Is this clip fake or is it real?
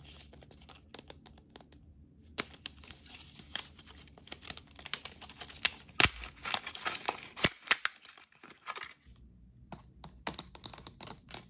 real